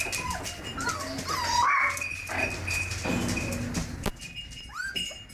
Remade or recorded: recorded